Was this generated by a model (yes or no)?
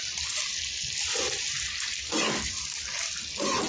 no